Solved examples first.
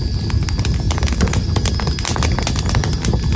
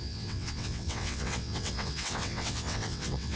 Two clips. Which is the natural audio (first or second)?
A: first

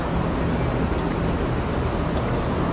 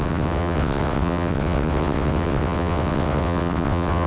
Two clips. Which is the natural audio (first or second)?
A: first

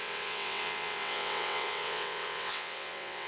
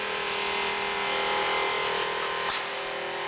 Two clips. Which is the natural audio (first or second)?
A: second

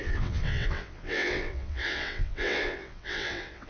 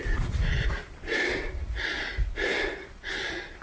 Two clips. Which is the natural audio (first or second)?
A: second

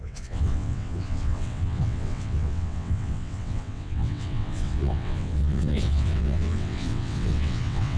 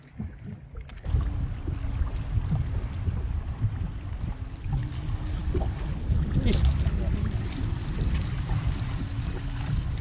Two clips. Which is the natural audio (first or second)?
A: second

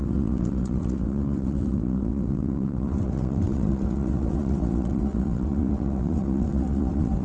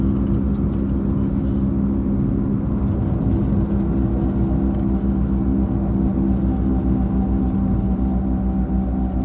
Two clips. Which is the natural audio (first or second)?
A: second